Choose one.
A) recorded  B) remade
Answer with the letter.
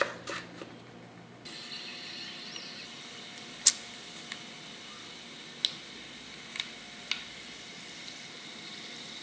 A